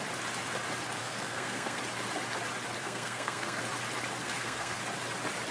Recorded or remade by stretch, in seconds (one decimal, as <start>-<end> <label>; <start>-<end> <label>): 0.0-1.0 recorded; 1.0-1.8 remade; 1.8-2.8 recorded; 2.8-3.6 remade; 3.6-4.2 recorded; 4.2-4.8 remade; 4.8-5.5 recorded